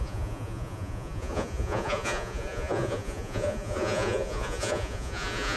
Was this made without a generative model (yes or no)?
no